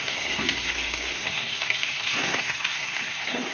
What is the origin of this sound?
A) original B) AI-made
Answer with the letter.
B